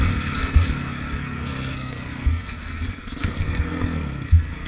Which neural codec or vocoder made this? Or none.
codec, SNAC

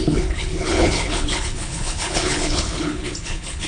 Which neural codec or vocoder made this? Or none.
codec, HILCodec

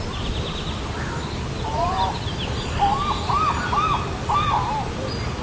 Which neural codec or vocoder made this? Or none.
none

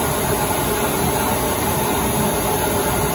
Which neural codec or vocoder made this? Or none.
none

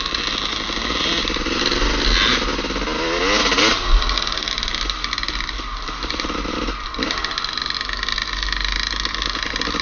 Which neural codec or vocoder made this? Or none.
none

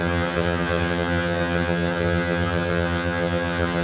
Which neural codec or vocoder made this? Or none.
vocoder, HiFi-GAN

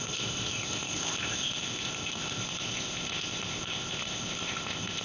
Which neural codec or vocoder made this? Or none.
codec, ZipCodec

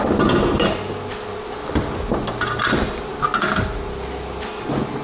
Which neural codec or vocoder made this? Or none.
none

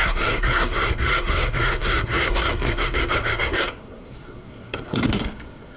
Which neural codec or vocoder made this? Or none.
codec, SNAC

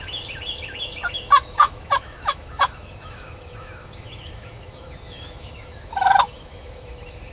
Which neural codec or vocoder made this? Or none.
autoencoder, DAC-VAE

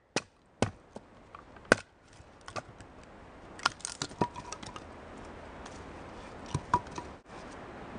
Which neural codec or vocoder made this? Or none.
none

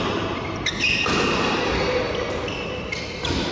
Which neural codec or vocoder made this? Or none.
none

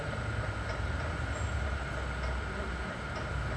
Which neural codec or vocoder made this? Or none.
none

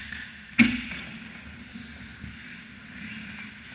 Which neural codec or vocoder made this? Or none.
none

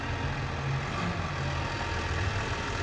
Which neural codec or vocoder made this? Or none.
none